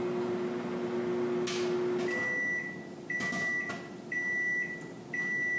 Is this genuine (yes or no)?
yes